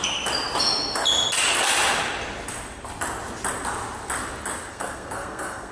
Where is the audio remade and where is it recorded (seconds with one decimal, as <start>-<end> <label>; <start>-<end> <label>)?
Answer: 0.0-4.7 recorded; 4.7-5.7 remade